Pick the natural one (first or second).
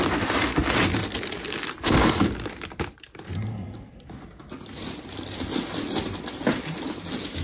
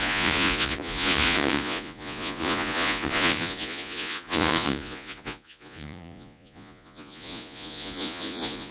first